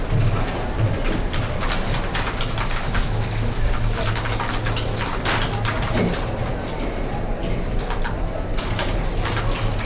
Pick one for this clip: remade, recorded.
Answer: recorded